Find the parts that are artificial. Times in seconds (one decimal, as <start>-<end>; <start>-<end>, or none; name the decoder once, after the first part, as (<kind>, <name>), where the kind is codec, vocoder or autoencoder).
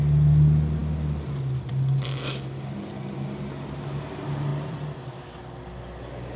4.5-5.1 (vocoder, BigVGAN v2)